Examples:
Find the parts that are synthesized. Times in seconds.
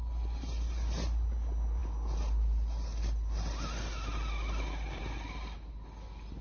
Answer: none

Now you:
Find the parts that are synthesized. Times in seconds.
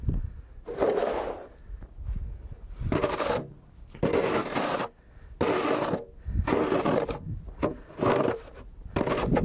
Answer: 4.4-5.3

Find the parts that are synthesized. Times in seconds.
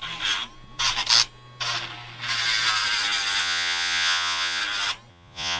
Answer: 3.4-4.6; 5.1-5.6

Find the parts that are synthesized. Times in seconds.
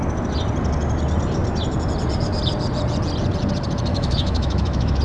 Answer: 3.9-5.0